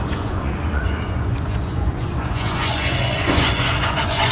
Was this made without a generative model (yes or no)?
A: no